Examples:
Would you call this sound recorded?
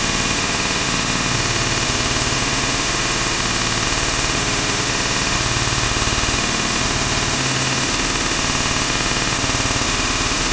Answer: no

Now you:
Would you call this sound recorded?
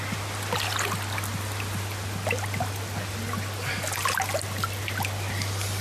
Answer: yes